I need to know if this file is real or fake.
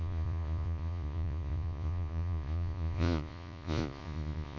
fake